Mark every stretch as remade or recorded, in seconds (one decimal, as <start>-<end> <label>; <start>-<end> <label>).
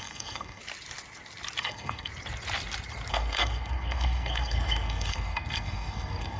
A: 0.0-0.6 remade; 0.6-1.6 recorded; 1.6-2.1 remade; 2.1-3.1 recorded; 3.1-6.4 remade